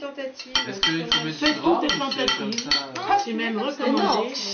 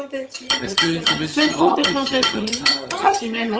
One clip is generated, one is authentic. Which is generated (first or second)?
second